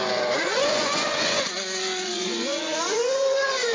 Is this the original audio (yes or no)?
no